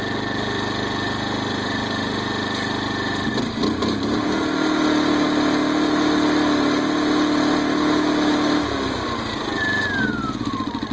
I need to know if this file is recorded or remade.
recorded